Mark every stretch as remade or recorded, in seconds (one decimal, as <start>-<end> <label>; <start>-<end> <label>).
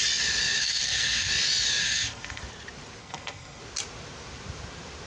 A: 0.0-0.6 recorded; 0.6-1.3 remade; 1.3-1.8 recorded; 1.8-2.4 remade; 2.4-3.0 recorded; 3.0-3.6 remade; 3.6-5.1 recorded